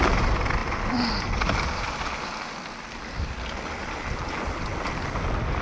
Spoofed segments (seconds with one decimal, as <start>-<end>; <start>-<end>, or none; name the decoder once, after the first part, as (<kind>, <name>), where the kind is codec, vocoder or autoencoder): none